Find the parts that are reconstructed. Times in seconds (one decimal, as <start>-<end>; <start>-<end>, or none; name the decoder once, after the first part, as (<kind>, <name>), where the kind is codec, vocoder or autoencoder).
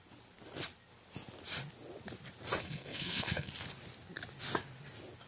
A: 2.6-3.5 (codec, SNAC)